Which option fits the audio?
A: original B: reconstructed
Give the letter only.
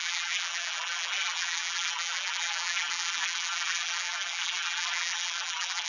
B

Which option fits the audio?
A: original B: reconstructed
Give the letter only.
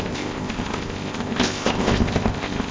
B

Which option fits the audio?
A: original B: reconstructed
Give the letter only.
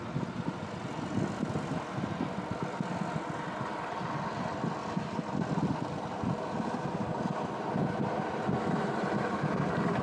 A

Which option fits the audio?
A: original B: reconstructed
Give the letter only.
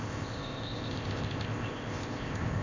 B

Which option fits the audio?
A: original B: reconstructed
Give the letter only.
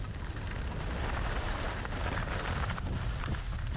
A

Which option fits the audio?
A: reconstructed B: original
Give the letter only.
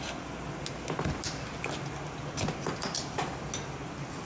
B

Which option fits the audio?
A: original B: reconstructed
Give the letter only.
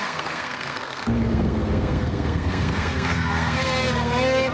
B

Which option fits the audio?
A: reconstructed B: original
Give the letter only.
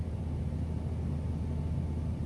B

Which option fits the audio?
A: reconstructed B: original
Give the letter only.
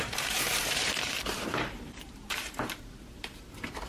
A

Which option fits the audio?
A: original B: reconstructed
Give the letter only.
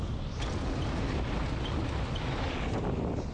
A